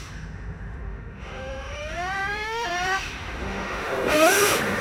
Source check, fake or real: fake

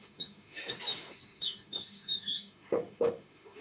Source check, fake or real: fake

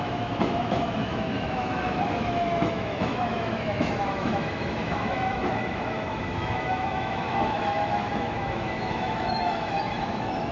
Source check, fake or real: fake